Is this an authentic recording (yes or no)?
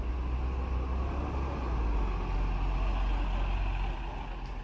yes